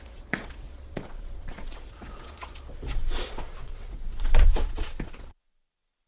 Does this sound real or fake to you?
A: fake